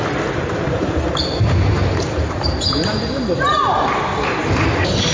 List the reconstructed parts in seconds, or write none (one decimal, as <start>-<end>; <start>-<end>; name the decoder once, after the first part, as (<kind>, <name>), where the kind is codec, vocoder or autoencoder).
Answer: 1.8-3.0 (vocoder, BigVGAN v2)